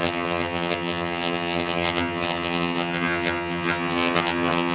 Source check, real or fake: fake